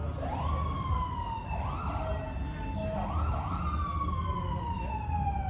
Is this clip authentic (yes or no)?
yes